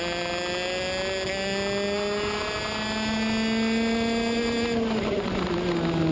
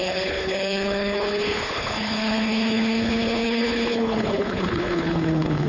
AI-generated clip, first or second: second